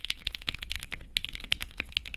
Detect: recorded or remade remade